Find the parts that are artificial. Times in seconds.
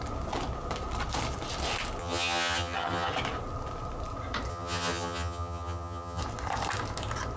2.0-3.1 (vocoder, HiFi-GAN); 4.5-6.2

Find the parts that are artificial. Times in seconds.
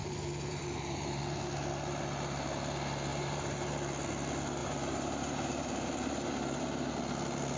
0.0-1.2 (vocoder, BigVGAN v2); 3.1-3.7; 4.6-6.9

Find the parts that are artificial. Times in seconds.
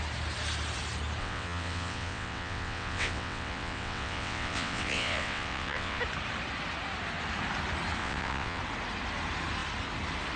1.2-6.0 (vocoder, WaveNeXt); 8.0-8.6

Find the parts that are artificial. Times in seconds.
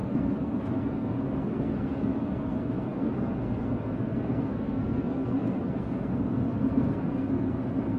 0.0-8.0 (codec, SNAC)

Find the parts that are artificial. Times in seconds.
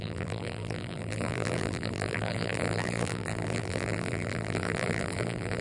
0.0-5.6 (vocoder, BigVGAN v2)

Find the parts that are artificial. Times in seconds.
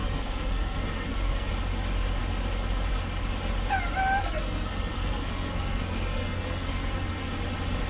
0.0-1.5 (codec, SNAC); 4.2-7.3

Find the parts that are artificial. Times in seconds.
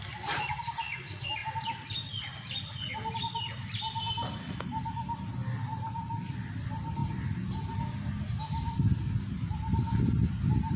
7.0-7.8 (vocoder, BigVGAN v2)